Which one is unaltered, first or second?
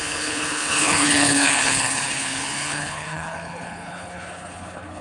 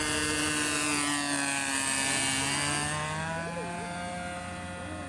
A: second